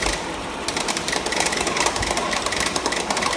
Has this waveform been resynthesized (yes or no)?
yes